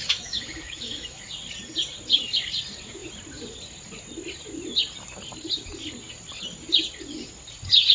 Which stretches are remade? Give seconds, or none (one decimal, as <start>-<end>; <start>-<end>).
0.0-1.2